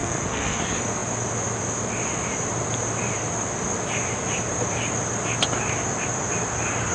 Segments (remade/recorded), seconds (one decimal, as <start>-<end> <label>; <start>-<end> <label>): 0.0-0.6 remade; 0.6-6.9 recorded